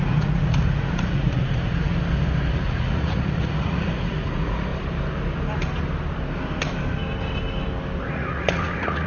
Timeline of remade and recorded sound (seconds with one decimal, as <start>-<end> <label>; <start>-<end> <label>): 0.0-1.9 remade; 1.9-2.5 recorded; 2.5-4.7 remade; 4.7-8.0 recorded; 8.0-9.1 remade

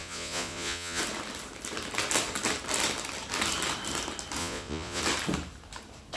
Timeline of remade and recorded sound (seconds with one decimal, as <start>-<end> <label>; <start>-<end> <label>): 0.0-1.0 remade; 1.0-4.4 recorded; 4.4-5.0 remade; 5.0-6.2 recorded

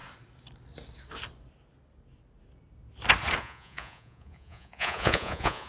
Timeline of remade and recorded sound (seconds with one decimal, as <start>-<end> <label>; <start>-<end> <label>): 0.0-3.4 recorded; 3.4-5.7 remade

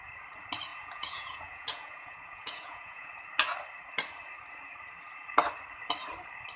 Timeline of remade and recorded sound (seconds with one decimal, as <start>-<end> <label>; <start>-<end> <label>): 0.0-0.7 recorded; 0.7-3.1 remade; 3.1-6.6 recorded

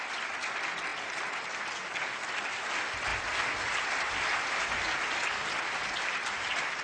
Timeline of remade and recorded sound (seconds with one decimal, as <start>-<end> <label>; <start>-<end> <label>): 0.0-6.8 recorded

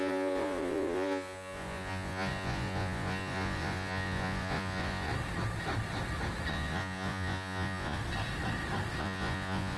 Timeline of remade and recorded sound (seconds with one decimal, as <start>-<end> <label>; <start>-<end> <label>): 0.0-5.1 remade; 5.1-6.5 recorded; 6.5-8.0 remade; 8.0-9.0 recorded; 9.0-9.8 remade

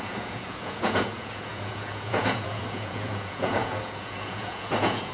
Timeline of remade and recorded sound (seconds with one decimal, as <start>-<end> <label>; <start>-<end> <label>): 0.0-5.1 remade